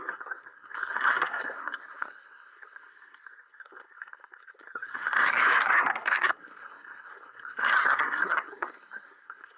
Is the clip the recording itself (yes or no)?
no